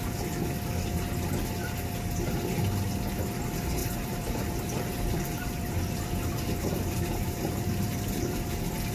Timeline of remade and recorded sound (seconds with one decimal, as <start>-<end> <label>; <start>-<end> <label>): 0.0-3.8 recorded; 3.8-8.9 remade